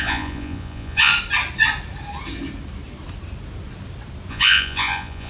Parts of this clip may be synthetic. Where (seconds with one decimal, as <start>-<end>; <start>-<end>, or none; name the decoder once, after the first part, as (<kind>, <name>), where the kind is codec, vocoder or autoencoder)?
0.0-1.1 (vocoder, Vocos); 4.3-5.3